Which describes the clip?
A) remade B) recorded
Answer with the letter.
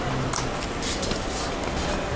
B